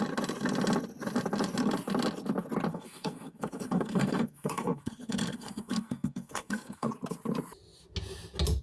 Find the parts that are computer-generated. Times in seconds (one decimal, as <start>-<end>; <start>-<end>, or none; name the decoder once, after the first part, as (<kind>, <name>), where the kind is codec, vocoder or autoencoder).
2.7-6.9 (codec, SNAC)

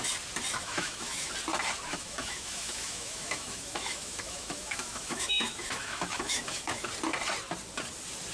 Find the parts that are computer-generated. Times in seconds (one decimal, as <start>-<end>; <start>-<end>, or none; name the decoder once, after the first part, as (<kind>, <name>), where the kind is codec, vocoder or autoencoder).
0.6-1.3 (autoencoder, DAC-VAE); 1.9-6.9

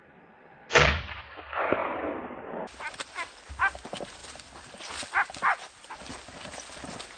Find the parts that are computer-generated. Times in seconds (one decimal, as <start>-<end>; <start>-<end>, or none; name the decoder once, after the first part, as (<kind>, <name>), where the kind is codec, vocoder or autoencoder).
4.2-6.1 (vocoder, BigVGAN v2)

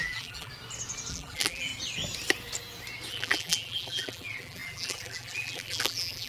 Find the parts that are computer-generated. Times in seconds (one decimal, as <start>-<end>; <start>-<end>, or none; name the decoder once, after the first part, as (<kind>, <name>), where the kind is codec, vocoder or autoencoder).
0.0-0.5 (vocoder, BigVGAN v2); 1.1-1.7; 3.1-6.3

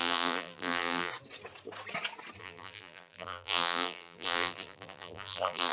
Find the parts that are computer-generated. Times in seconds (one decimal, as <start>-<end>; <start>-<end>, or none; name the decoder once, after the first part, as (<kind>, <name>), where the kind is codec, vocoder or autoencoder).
0.0-1.1 (vocoder, BigVGAN v2); 2.4-5.7

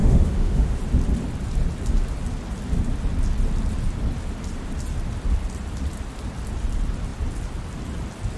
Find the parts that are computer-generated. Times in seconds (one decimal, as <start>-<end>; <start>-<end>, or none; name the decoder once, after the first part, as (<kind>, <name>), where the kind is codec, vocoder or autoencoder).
0.0-0.8 (autoencoder, DAC-VAE)

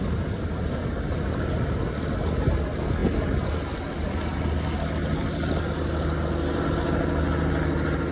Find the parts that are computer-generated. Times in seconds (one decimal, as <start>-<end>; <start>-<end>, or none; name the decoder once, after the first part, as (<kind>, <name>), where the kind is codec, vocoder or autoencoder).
none

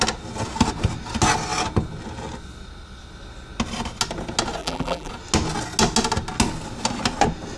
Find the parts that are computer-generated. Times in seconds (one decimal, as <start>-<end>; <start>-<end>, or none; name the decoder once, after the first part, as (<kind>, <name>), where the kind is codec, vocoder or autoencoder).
4.6-5.1 (vocoder, BigVGAN v2)